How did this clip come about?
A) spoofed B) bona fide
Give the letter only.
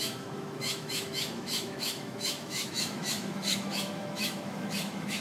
A